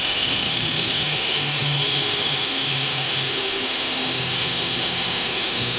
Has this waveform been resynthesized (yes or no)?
yes